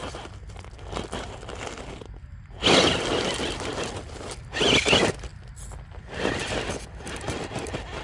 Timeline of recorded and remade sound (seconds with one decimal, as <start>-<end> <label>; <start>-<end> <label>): 0.0-8.0 recorded